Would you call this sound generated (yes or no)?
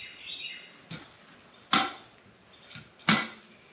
no